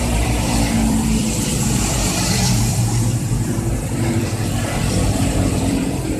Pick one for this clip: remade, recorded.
remade